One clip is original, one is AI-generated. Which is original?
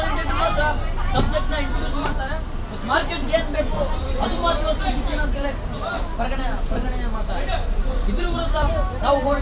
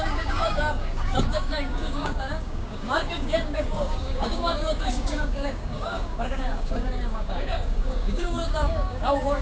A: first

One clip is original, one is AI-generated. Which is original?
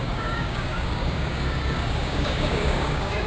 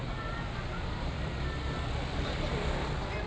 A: second